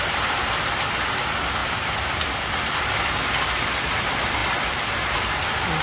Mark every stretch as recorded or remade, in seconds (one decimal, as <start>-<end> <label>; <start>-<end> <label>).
0.0-1.6 recorded; 1.6-2.1 remade; 2.1-5.8 recorded